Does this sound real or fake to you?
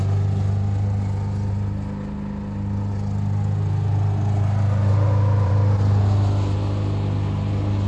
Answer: real